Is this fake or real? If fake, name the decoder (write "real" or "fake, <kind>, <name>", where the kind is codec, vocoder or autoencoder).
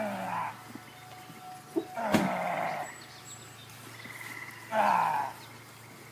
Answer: real